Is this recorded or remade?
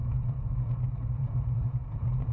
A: remade